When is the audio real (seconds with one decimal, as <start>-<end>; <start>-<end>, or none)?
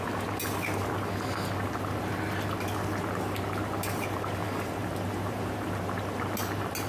0.0-4.4; 5.8-6.9